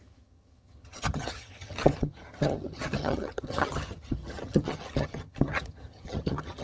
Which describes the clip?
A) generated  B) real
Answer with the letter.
A